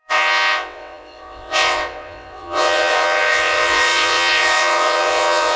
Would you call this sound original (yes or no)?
no